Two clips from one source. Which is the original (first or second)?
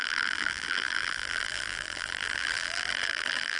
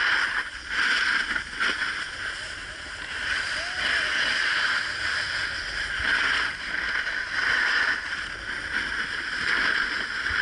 second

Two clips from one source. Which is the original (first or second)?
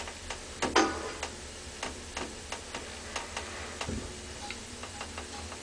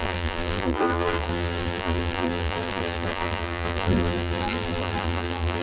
first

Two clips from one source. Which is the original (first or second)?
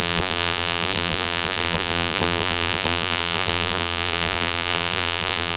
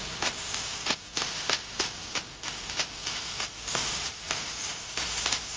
second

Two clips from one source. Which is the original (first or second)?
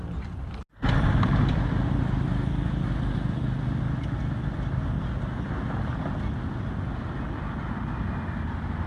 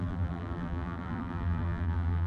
first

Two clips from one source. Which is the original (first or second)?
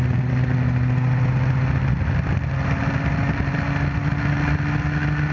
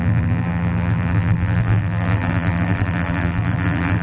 first